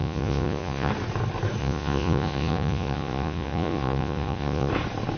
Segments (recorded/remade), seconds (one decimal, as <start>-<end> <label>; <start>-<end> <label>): 0.0-0.9 remade; 0.9-1.6 recorded; 1.6-4.7 remade; 4.7-5.2 recorded